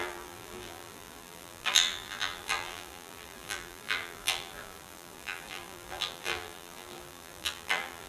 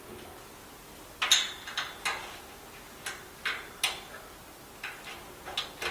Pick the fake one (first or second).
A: first